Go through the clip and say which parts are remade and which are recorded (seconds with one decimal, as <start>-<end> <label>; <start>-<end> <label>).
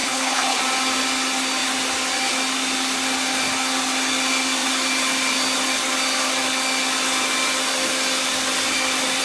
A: 0.0-0.6 remade; 0.6-9.2 recorded